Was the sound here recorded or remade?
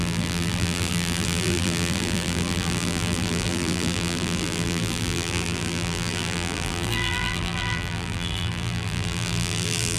remade